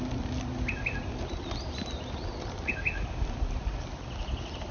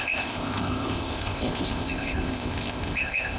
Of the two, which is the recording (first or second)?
first